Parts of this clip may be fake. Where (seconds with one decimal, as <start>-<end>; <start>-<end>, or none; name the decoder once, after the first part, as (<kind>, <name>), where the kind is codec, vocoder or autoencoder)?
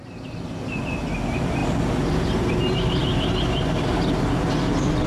none